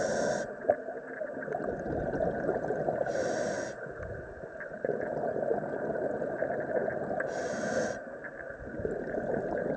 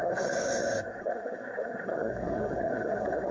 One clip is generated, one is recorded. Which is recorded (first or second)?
first